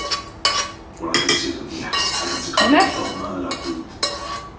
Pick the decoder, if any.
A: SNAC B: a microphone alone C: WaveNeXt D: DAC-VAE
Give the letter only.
B